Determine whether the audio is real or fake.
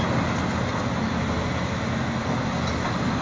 real